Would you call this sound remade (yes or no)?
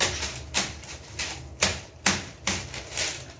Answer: no